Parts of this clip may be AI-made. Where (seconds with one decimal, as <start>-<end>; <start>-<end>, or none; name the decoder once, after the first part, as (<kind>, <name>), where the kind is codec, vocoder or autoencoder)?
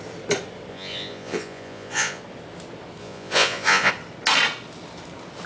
0.7-2.2 (vocoder, Vocos); 3.0-3.9